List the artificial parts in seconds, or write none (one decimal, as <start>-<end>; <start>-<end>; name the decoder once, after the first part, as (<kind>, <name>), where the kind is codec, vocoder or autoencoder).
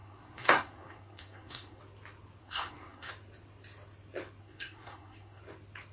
0.0-1.8 (codec, SNAC); 2.4-3.1; 4.4-5.4